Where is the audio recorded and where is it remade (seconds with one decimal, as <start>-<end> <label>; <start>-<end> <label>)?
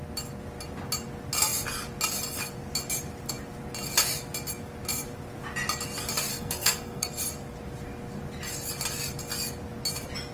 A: 0.0-6.3 recorded; 6.3-7.1 remade; 7.1-10.3 recorded